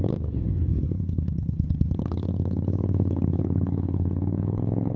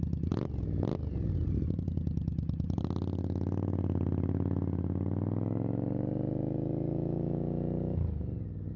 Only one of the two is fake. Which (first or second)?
first